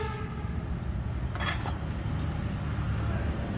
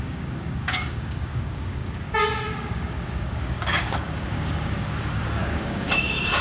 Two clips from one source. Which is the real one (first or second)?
first